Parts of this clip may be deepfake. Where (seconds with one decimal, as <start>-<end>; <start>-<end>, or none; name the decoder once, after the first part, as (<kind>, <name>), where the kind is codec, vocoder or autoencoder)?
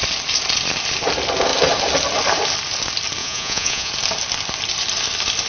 3.2-3.9 (vocoder, Vocos)